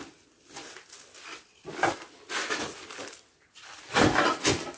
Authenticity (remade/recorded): recorded